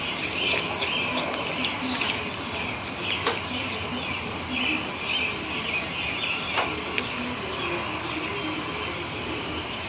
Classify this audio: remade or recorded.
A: recorded